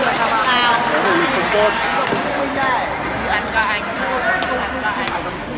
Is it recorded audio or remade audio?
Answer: recorded